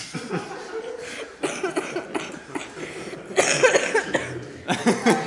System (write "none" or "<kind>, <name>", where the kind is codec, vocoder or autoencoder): none